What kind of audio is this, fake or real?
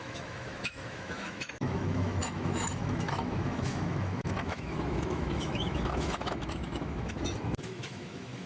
fake